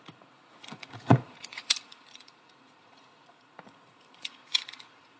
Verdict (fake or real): fake